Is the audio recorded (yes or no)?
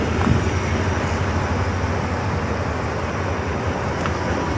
yes